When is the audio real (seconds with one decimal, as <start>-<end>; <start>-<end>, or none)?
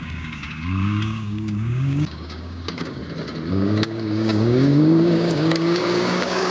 3.0-3.5